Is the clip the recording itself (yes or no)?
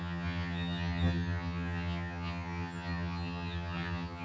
no